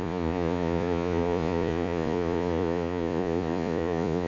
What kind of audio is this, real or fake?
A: fake